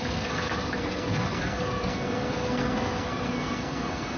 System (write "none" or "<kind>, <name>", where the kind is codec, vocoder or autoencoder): codec, SNAC